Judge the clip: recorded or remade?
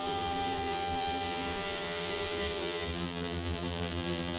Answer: remade